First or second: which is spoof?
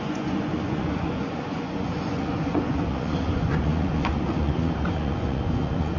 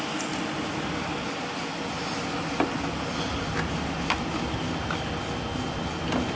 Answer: first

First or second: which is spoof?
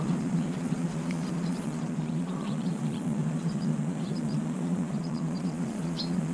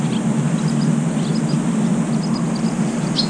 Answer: first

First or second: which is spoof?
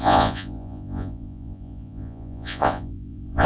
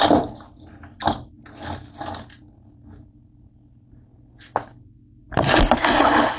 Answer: first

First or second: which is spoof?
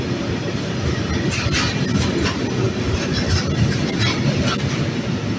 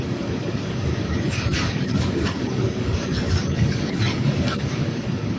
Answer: second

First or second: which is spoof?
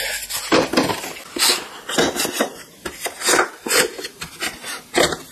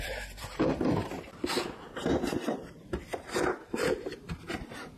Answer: second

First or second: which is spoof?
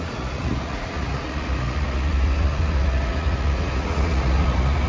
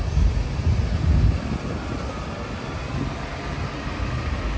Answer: first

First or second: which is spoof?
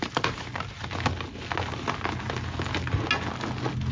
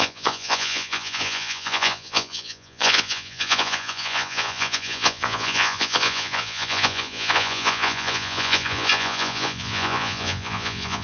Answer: second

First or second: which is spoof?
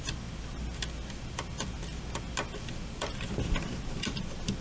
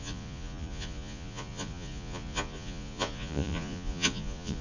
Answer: second